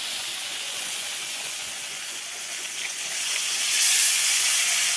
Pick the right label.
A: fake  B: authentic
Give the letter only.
A